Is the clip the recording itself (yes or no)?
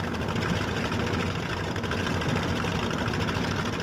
yes